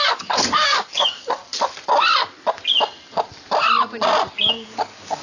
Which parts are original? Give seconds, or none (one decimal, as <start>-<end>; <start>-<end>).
1.4-4.5